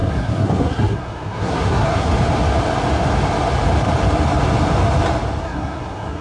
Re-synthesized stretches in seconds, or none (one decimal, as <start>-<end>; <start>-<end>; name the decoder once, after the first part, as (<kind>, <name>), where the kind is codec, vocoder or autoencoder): 0.0-2.1 (codec, SNAC); 5.4-6.2

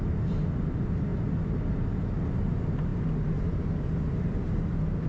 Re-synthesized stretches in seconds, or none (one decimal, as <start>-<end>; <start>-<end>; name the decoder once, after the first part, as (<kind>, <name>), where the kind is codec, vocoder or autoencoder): none

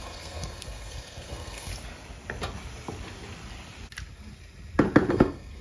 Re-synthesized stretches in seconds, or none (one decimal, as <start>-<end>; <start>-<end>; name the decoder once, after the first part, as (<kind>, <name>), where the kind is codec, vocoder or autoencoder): 0.0-1.7 (codec, SNAC); 5.1-5.6

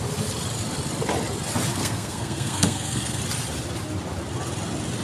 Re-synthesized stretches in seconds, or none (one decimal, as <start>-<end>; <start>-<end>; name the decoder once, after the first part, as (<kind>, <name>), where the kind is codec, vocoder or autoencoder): 1.7-3.2 (codec, SNAC)

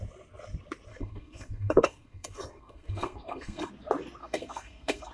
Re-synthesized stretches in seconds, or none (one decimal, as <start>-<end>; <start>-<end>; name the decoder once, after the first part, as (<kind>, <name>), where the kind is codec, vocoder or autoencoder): 0.9-3.7 (codec, SNAC); 4.2-5.1

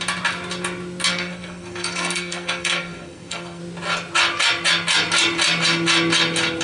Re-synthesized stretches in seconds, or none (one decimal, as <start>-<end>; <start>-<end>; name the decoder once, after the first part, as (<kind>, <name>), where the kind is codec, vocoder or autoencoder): 1.1-3.6 (codec, SNAC)